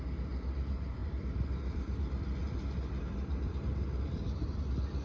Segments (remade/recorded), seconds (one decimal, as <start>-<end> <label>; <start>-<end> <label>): 0.0-5.0 recorded